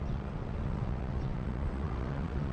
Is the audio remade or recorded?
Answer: remade